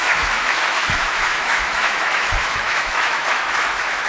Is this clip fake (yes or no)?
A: yes